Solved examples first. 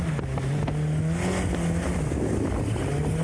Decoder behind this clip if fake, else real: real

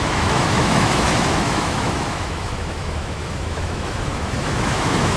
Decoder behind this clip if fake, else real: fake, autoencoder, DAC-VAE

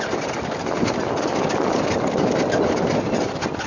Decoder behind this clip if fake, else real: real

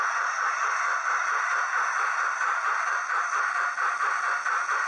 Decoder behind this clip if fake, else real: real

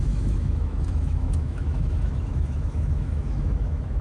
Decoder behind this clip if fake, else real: fake, autoencoder, DAC-VAE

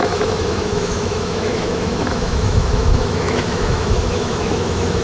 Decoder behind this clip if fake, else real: fake, autoencoder, DAC-VAE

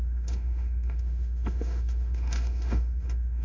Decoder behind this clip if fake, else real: fake, autoencoder, DAC-VAE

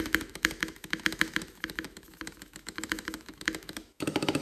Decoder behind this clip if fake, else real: fake, autoencoder, DAC-VAE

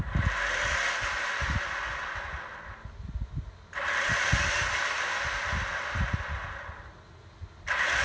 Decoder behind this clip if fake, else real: real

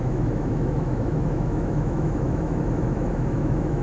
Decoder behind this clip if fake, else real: fake, autoencoder, DAC-VAE